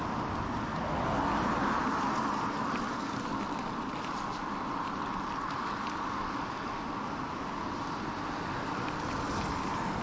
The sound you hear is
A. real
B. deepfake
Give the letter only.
A